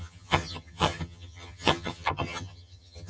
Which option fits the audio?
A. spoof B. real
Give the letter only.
A